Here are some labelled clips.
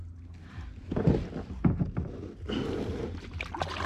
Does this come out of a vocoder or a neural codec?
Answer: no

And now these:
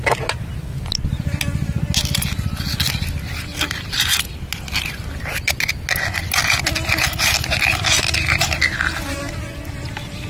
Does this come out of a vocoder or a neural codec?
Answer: no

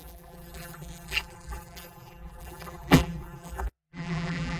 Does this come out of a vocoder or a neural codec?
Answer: yes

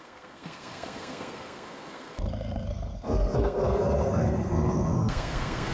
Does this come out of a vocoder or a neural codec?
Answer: yes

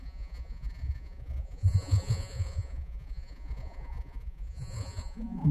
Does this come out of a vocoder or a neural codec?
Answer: yes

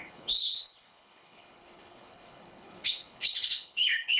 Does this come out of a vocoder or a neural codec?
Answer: yes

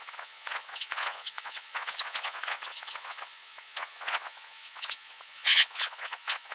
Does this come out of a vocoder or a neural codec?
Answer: yes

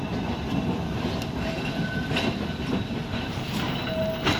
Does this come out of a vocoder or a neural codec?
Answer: no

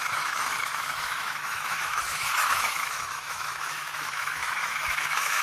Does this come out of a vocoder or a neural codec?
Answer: yes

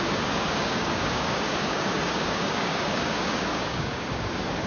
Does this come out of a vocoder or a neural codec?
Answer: yes